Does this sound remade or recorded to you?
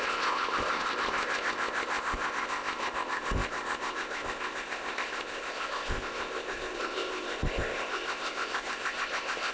remade